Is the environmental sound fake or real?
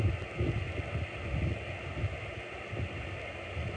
real